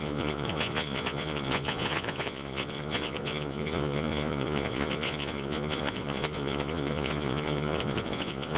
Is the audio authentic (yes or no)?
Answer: no